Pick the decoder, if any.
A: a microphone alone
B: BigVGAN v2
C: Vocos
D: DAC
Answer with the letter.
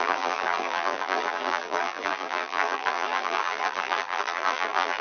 B